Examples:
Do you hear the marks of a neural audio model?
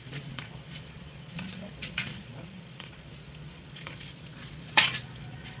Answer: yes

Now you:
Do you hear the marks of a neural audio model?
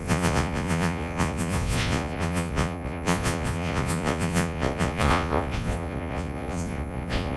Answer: yes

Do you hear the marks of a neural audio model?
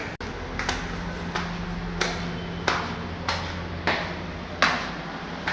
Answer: no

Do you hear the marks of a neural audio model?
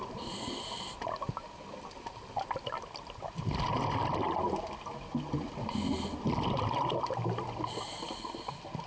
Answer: no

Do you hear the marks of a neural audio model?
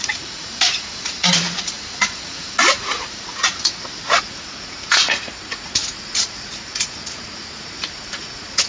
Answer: yes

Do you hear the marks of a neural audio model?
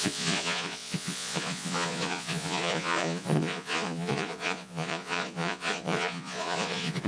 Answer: yes